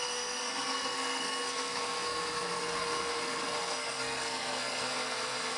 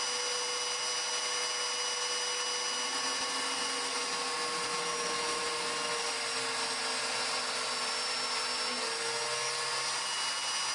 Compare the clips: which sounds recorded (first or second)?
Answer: second